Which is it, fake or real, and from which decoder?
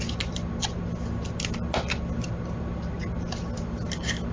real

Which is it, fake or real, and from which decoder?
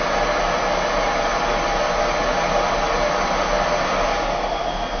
real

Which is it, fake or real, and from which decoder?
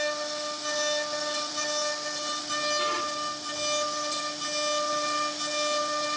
real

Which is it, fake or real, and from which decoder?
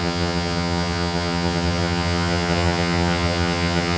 fake, vocoder, HiFi-GAN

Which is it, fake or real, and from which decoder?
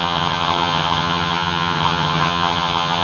fake, vocoder, HiFi-GAN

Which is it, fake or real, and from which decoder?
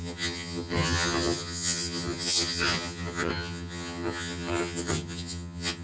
fake, vocoder, HiFi-GAN